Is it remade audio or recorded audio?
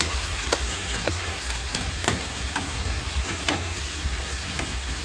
remade